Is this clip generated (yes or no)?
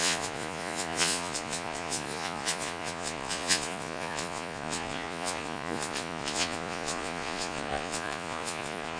yes